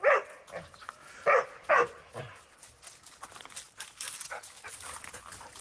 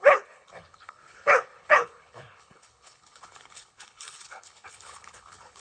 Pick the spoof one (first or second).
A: second